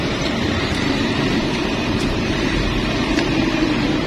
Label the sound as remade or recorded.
remade